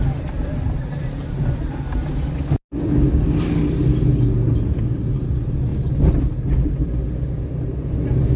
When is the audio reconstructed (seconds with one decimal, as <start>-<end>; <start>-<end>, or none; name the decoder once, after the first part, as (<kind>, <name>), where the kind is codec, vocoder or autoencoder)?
none